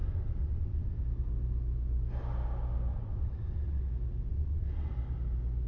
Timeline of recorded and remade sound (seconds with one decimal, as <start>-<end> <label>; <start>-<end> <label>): 0.0-1.0 remade; 1.0-2.9 recorded; 2.9-3.9 remade; 3.9-4.3 recorded; 4.3-4.9 remade; 4.9-5.7 recorded